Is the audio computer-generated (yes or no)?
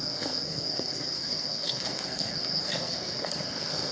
yes